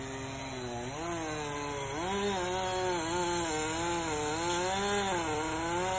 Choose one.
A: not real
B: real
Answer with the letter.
B